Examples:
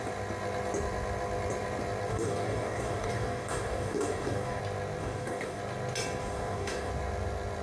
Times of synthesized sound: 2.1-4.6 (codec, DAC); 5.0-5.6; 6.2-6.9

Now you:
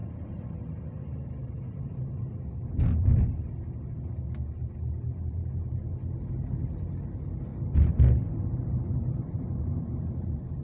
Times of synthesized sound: none

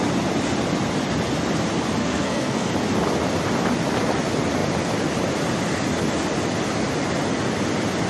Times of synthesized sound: 2.0-2.7 (codec, SNAC)

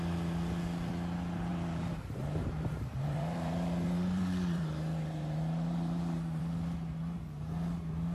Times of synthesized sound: 1.5-6.4 (vocoder, BigVGAN v2)

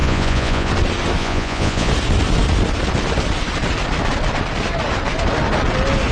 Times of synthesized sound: 0.0-0.7 (vocoder, Vocos); 1.2-1.9

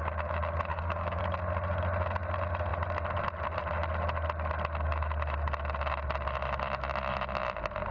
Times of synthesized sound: 0.7-1.2 (codec, DAC)

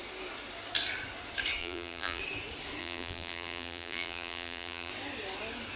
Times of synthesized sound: 1.6-2.2 (vocoder, BigVGAN v2); 2.8-4.9